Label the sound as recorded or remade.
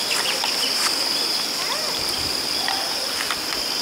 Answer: remade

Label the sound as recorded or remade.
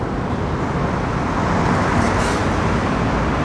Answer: recorded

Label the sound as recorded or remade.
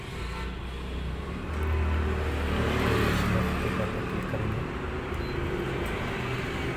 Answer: recorded